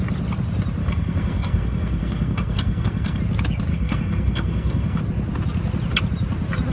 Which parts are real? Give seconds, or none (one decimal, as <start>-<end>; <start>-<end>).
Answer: 0.0-0.8; 3.2-3.7; 5.0-6.7